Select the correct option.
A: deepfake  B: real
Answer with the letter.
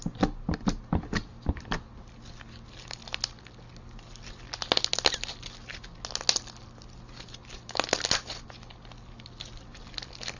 B